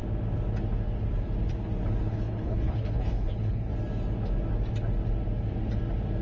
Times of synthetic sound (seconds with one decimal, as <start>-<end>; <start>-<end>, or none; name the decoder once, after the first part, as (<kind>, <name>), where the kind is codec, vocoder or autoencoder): 2.0-3.7 (codec, HILCodec)